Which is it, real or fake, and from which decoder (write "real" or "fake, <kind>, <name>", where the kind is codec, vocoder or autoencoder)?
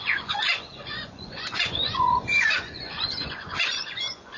fake, vocoder, Vocos